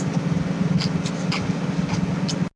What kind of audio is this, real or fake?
real